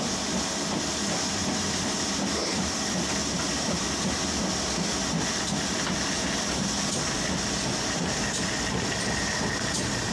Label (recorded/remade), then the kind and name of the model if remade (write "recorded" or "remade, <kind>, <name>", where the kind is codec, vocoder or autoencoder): recorded